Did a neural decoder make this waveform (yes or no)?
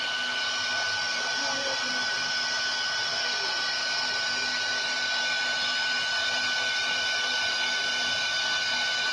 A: no